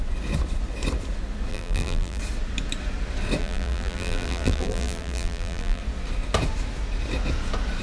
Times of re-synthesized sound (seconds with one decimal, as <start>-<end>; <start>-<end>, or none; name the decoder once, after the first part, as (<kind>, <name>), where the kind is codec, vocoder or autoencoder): 1.5-2.2 (vocoder, BigVGAN v2); 3.4-5.8